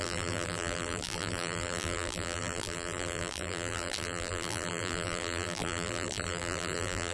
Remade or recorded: remade